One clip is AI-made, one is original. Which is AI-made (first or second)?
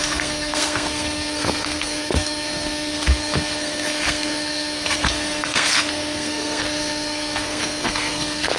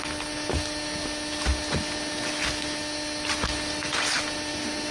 first